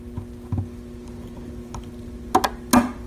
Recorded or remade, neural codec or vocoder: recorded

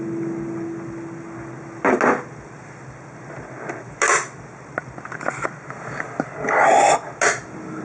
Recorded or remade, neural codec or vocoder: recorded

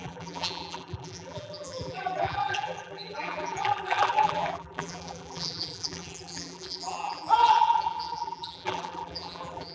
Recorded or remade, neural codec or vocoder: remade, vocoder, BigVGAN v2